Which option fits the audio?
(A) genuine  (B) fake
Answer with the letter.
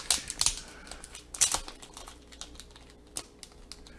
A